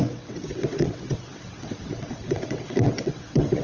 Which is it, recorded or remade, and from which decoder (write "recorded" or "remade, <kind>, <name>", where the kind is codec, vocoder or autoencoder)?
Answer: remade, vocoder, WaveNeXt